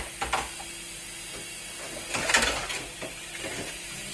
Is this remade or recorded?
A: recorded